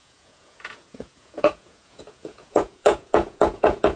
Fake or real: fake